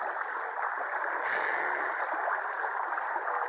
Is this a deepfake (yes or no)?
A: no